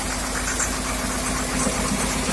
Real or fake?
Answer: real